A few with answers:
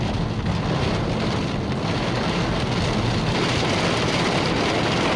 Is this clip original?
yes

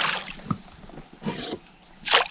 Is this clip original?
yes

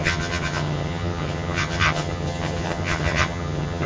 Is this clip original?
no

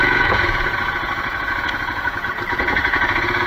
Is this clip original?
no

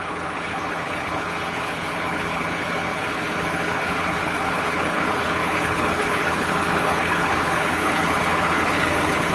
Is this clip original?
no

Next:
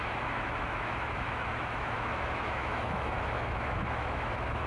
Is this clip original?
no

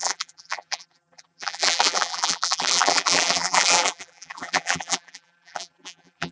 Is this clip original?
no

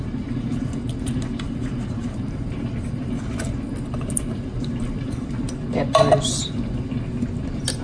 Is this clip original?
yes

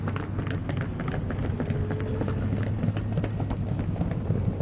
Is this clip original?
yes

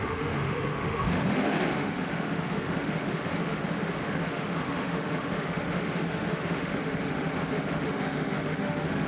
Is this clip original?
no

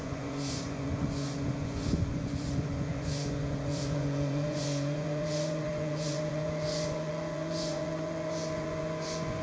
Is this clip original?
no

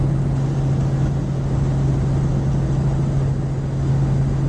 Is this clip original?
yes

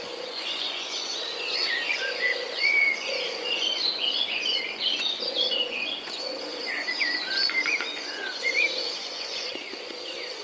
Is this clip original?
no